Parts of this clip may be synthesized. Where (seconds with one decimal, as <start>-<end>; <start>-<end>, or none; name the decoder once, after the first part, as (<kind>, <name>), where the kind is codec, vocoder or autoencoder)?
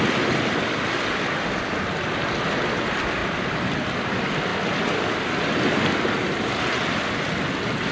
none